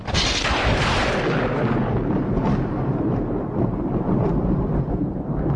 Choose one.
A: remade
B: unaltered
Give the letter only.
B